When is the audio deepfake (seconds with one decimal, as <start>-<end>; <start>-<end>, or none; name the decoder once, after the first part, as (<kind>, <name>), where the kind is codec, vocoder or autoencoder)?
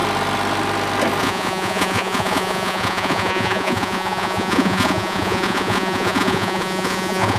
1.2-7.4 (vocoder, Vocos)